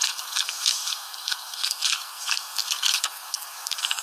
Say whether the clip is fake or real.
fake